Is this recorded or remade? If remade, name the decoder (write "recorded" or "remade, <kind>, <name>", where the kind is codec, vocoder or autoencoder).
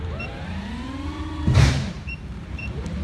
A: remade, vocoder, BigVGAN v2